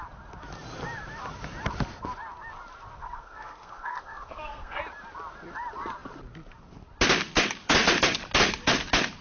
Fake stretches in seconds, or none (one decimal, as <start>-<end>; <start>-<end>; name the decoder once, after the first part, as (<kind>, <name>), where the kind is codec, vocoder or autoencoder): 3.0-4.8 (codec, SNAC)